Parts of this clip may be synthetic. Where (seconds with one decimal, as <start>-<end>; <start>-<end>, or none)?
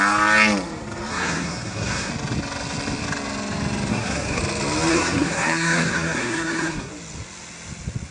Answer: 1.1-2.1; 3.9-4.4; 4.9-6.9